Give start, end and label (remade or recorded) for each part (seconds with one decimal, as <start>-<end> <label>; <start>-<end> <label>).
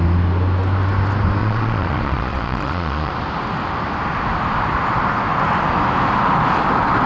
0.0-1.4 recorded; 1.4-3.1 remade; 3.1-7.1 recorded